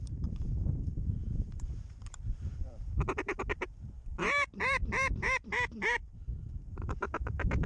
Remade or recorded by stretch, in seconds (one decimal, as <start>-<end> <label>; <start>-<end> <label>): 0.0-7.7 remade